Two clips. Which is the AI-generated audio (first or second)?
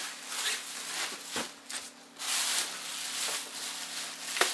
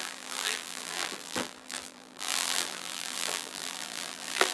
second